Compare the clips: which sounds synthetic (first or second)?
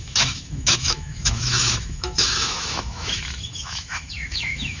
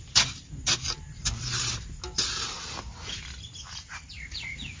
first